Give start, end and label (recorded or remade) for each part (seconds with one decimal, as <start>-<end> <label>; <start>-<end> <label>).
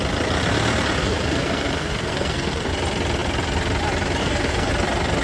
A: 0.0-1.0 recorded; 1.0-2.7 remade; 2.7-4.2 recorded; 4.2-4.7 remade; 4.7-5.2 recorded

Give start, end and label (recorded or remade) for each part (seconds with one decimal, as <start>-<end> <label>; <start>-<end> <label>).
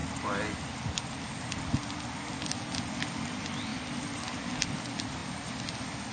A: 0.0-6.1 recorded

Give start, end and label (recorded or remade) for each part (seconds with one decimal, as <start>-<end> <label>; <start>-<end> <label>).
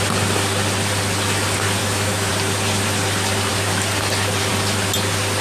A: 0.0-1.8 recorded; 1.8-2.3 remade; 2.3-5.4 recorded